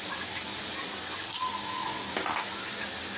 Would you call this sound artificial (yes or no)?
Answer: no